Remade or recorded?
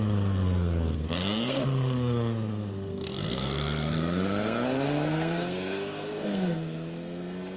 remade